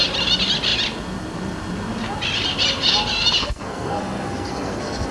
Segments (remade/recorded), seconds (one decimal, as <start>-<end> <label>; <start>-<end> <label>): 0.0-3.4 recorded; 3.4-5.1 remade